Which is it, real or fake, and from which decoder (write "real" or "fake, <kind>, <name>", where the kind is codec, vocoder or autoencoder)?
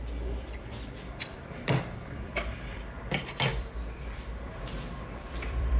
fake, vocoder, BigVGAN v2